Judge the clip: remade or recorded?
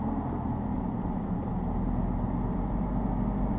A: recorded